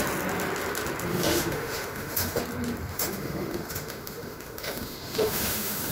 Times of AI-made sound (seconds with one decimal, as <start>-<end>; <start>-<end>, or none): 1.1-2.4; 2.9-5.9